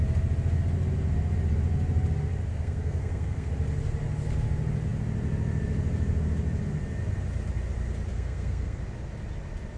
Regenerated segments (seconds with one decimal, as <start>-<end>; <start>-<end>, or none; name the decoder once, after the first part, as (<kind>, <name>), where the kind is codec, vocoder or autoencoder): 2.5-3.5 (codec, SNAC); 8.1-8.8